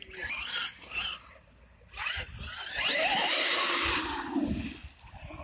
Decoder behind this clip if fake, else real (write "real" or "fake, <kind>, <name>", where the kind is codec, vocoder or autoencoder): real